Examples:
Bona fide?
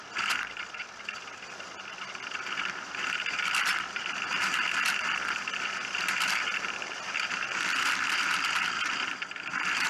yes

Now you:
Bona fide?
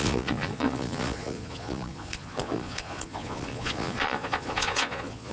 no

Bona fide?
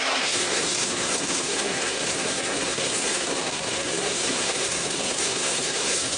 no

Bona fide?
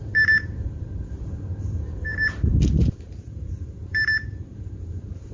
no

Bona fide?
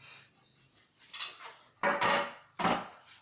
yes